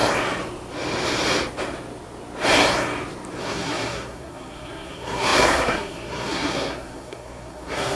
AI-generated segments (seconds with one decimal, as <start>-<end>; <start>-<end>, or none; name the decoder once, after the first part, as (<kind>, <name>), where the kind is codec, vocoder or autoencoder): 3.4-8.0 (codec, SNAC)